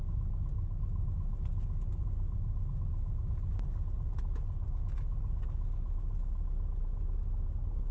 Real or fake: real